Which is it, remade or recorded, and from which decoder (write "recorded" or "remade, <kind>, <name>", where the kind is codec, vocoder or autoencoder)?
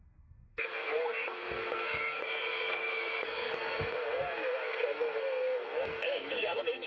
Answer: remade, codec, SNAC